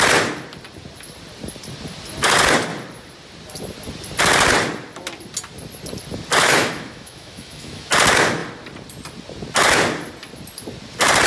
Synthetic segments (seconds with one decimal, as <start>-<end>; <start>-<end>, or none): 6.4-7.9